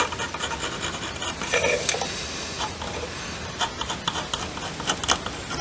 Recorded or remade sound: recorded